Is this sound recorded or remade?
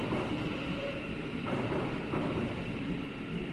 recorded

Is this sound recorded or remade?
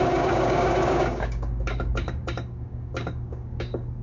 remade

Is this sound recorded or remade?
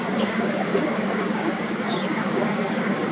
remade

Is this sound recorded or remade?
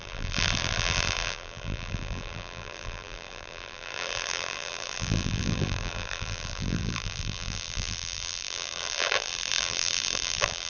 remade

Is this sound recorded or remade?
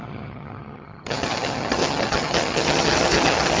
remade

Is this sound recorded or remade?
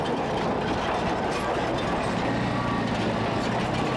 recorded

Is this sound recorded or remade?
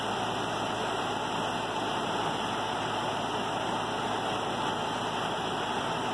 recorded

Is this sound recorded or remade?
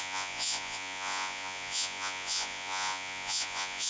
remade